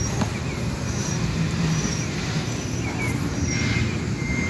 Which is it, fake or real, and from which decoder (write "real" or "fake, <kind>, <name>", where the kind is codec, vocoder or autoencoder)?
fake, vocoder, BigVGAN v2